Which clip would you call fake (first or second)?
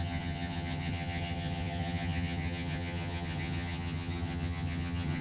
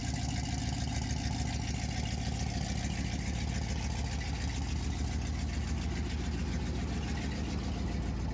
first